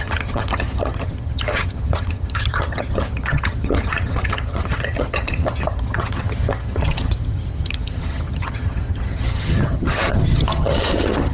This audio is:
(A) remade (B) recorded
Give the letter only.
A